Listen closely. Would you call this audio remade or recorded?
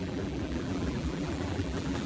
remade